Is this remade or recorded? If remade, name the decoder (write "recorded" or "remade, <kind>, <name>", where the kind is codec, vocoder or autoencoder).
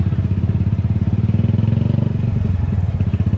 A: remade, vocoder, BigVGAN v2